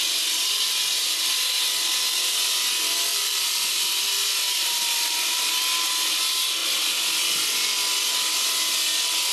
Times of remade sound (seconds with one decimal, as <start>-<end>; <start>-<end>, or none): 3.1-5.5